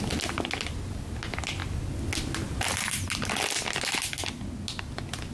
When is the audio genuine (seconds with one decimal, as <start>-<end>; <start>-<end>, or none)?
0.0-5.3